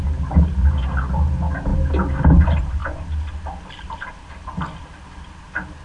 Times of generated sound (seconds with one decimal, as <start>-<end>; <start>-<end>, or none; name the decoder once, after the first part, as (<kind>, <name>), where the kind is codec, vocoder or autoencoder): none

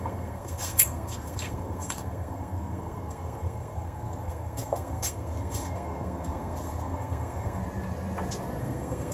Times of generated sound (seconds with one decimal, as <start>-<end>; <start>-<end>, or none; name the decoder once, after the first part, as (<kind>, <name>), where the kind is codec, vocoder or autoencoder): 0.0-7.6 (codec, SNAC); 8.6-9.1

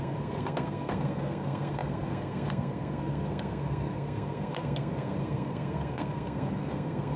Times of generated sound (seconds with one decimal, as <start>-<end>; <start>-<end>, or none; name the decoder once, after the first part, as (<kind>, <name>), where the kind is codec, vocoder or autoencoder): 0.0-7.2 (codec, SNAC)

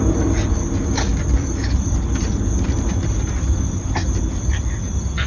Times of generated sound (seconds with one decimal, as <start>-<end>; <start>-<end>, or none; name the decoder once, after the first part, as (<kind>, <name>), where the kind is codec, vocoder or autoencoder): none